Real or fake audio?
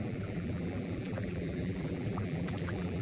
fake